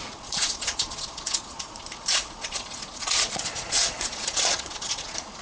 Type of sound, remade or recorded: remade